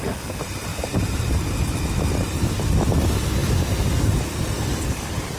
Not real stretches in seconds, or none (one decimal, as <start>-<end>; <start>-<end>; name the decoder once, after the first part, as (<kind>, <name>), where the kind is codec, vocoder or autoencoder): 0.7-1.6 (vocoder, BigVGAN v2)